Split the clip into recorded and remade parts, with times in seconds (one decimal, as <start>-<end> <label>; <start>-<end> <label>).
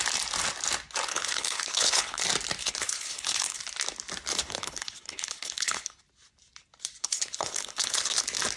0.0-1.1 recorded; 1.1-2.2 remade; 2.2-2.6 recorded; 2.6-3.6 remade; 3.6-4.3 recorded; 4.3-6.0 remade; 6.0-7.0 recorded; 7.0-8.2 remade; 8.2-8.6 recorded